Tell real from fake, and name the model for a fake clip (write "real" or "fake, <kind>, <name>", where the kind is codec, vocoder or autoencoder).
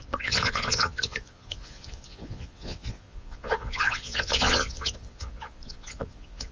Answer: fake, vocoder, Vocos